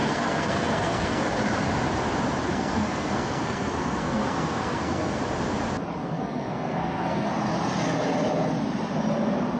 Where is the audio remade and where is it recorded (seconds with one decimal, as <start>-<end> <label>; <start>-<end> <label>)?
0.0-1.3 remade; 1.3-2.5 recorded; 2.5-5.2 remade; 5.2-6.0 recorded; 6.0-7.3 remade; 7.3-9.6 recorded